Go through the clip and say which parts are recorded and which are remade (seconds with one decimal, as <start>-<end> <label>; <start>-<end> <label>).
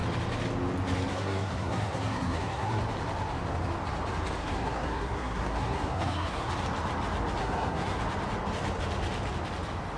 0.0-1.1 recorded; 1.1-2.8 remade; 2.8-4.4 recorded; 4.4-6.5 remade; 6.5-7.4 recorded; 7.4-8.0 remade; 8.0-10.0 recorded